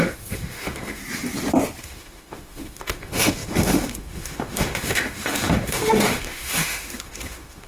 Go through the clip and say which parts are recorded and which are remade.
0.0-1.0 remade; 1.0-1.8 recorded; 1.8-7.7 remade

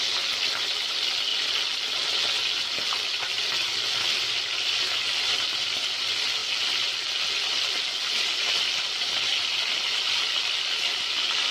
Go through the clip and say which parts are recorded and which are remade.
0.0-11.5 recorded

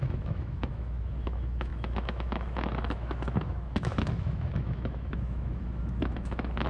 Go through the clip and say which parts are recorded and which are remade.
0.0-6.7 remade

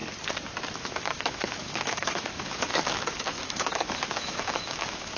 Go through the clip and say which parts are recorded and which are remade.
0.0-0.8 recorded; 0.8-5.2 remade